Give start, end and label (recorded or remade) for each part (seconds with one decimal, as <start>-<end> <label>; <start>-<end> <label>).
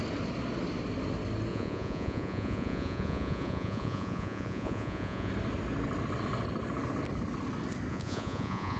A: 0.0-1.5 recorded; 1.5-5.3 remade; 5.3-7.9 recorded; 7.9-8.8 remade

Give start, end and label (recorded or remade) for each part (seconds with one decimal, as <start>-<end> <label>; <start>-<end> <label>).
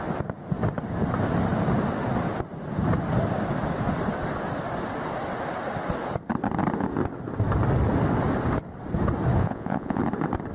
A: 0.0-9.4 recorded; 9.4-10.0 remade; 10.0-10.5 recorded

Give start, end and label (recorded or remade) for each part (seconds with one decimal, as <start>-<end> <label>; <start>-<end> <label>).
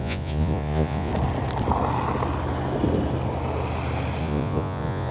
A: 0.0-1.1 remade; 1.1-4.2 recorded; 4.2-5.1 remade